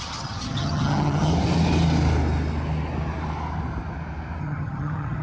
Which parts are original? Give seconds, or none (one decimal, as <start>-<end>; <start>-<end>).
1.3-4.4